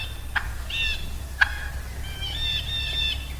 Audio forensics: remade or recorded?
recorded